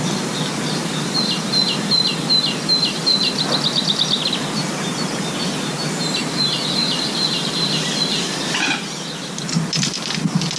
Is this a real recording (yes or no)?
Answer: yes